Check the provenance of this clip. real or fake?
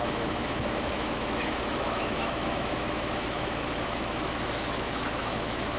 fake